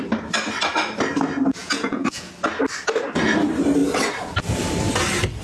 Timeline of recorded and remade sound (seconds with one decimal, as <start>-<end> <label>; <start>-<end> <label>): 0.0-1.6 recorded; 1.6-2.3 remade; 2.3-5.4 recorded